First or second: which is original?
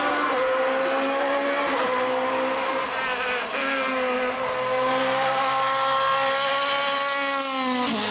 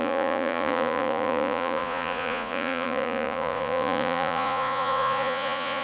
first